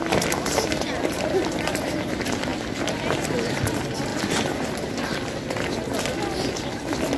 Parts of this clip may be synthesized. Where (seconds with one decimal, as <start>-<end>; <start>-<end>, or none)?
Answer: none